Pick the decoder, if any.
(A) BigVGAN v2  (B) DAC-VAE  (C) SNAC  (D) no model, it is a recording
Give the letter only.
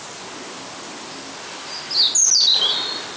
D